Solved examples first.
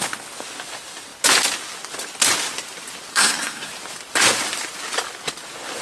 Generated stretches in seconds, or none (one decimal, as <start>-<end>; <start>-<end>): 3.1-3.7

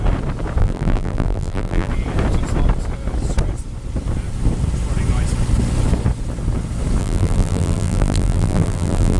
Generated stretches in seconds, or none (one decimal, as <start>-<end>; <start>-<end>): 0.6-1.9; 7.0-9.2

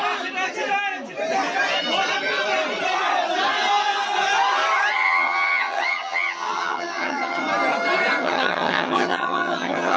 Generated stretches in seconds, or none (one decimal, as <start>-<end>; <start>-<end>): 4.9-7.4; 8.2-10.0